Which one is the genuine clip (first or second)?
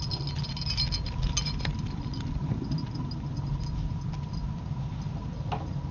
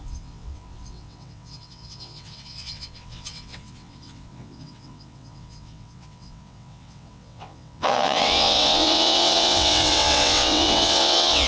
first